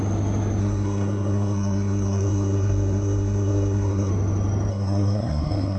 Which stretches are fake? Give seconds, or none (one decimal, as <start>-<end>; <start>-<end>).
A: 0.6-4.1; 4.7-5.8